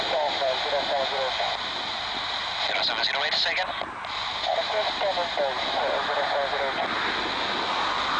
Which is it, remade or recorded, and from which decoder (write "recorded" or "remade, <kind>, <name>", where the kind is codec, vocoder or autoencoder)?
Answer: recorded